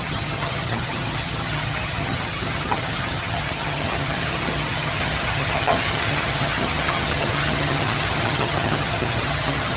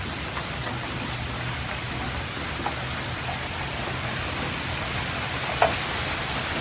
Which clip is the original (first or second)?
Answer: second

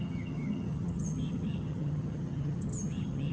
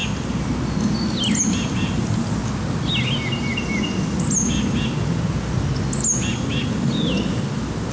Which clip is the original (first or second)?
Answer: second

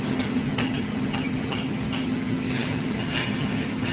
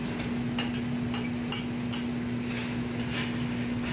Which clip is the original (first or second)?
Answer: second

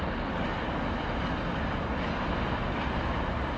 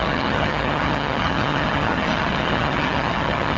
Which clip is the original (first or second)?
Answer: first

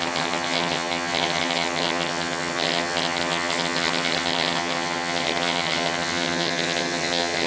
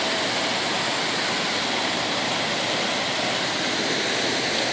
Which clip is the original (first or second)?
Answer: second